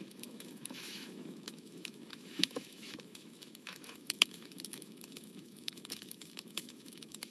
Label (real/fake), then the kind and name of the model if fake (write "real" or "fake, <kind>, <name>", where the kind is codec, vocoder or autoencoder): fake, autoencoder, DAC-VAE